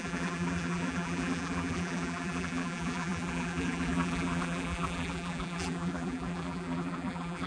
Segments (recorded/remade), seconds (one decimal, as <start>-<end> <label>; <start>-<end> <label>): 0.0-7.5 remade